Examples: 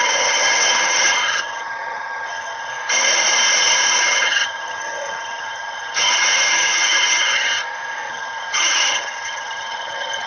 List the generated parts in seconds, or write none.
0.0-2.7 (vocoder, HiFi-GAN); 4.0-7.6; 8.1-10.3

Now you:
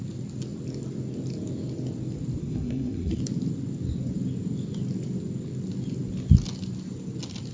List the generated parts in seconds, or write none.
2.4-3.2 (codec, SNAC)

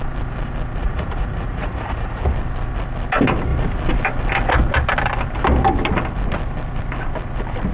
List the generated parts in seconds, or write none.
0.8-2.2 (vocoder, Vocos)

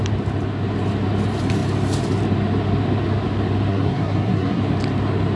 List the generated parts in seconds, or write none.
3.7-4.6 (codec, SNAC)